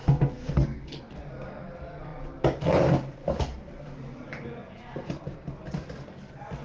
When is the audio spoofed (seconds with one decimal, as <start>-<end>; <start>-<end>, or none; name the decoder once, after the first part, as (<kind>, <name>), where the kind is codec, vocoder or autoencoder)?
0.0-1.0 (codec, SNAC)